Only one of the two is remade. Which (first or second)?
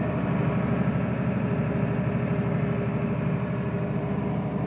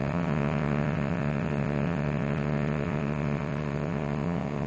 second